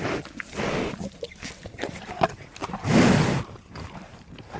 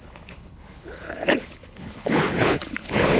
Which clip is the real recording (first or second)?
first